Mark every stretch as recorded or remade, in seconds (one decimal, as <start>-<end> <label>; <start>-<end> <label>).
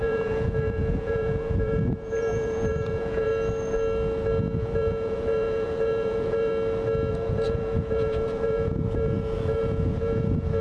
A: 0.0-3.3 remade; 3.3-4.6 recorded; 4.6-6.5 remade; 6.5-7.1 recorded; 7.1-10.6 remade